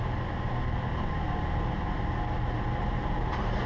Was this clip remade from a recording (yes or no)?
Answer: no